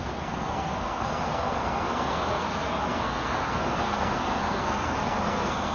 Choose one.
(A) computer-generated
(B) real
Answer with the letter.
A